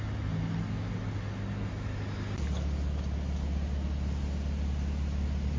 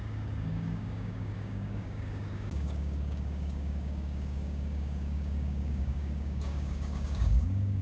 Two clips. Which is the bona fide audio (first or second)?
first